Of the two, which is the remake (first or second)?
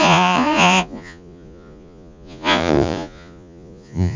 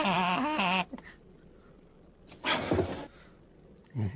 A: first